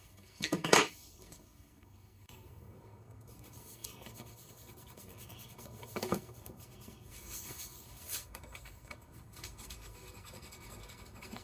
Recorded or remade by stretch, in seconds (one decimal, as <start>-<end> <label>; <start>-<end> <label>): 0.0-11.4 remade